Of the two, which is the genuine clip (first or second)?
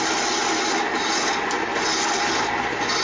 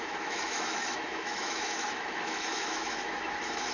first